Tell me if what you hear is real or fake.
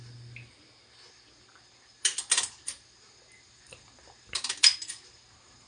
real